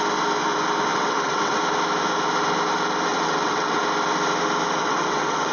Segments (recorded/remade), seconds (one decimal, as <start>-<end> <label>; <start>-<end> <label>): 0.0-0.9 recorded; 0.9-1.6 remade; 1.6-3.1 recorded; 3.1-3.8 remade; 3.8-4.8 recorded; 4.8-5.5 remade

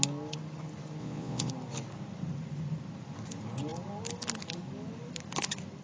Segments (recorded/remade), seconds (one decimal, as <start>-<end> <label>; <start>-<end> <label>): 0.0-1.0 recorded; 1.0-1.5 remade; 1.5-5.8 recorded

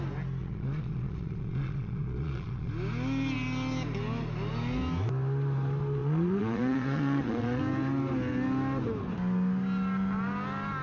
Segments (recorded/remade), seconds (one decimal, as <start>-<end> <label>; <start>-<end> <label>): 0.0-0.4 recorded; 0.4-2.7 remade; 2.7-6.0 recorded; 6.0-7.6 remade; 7.6-10.8 recorded

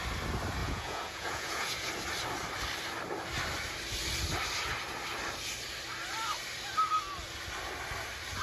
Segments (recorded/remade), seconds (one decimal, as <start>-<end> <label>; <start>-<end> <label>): 0.0-0.6 recorded; 0.6-1.9 remade; 1.9-8.4 recorded

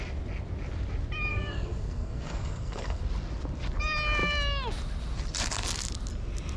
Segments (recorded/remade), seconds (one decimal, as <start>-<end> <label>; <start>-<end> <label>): 0.0-1.3 recorded; 1.3-3.0 remade; 3.0-6.6 recorded

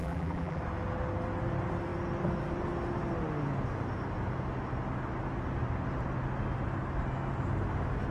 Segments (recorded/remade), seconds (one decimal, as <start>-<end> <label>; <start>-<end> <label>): 0.0-0.6 remade; 0.6-8.1 recorded